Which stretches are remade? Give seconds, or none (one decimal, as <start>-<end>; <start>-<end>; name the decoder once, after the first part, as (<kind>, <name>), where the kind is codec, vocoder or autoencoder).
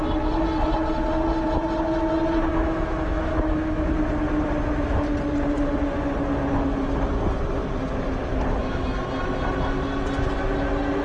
2.5-3.9 (autoencoder, DAC-VAE)